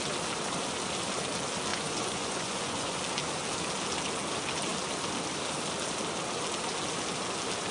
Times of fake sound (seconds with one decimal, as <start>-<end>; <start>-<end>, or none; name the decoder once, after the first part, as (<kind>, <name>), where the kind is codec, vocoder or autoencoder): 1.7-3.0 (vocoder, Vocos)